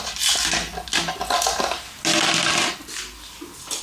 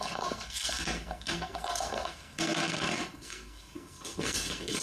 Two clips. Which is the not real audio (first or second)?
second